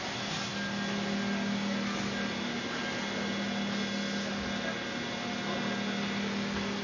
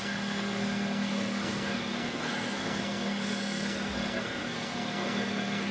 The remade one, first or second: second